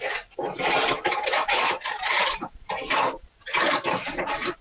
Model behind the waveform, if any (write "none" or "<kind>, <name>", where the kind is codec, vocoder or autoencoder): vocoder, BigVGAN v2